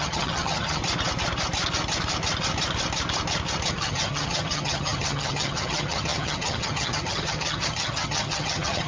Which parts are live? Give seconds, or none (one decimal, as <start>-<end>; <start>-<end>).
0.8-3.7